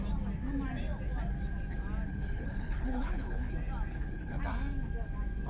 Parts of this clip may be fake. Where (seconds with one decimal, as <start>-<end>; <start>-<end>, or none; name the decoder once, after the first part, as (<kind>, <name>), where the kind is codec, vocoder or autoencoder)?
2.1-3.5 (codec, HILCodec); 3.9-4.4